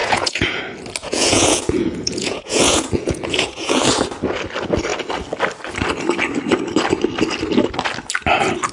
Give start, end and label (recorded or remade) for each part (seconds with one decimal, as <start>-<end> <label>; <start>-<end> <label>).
0.0-0.6 remade; 0.6-1.0 recorded; 1.0-3.8 remade; 3.8-8.7 recorded

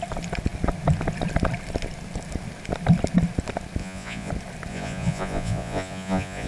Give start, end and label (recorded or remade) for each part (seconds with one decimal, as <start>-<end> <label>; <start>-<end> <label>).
0.0-3.8 recorded; 3.8-4.3 remade; 4.3-4.7 recorded; 4.7-6.5 remade

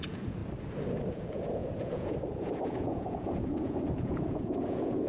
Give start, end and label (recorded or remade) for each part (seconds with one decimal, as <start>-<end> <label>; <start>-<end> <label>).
0.0-0.4 remade; 0.4-1.1 recorded; 1.1-5.1 remade